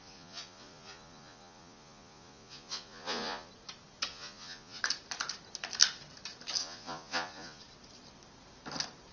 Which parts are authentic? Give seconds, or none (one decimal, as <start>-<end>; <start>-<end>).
3.5-4.1; 4.8-6.6; 7.6-9.1